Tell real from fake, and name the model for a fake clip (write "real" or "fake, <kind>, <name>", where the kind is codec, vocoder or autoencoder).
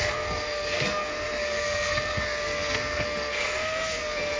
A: fake, codec, SNAC